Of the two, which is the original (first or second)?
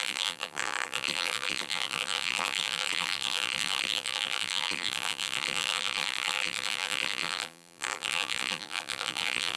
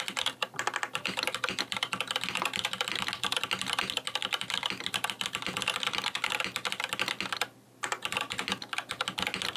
second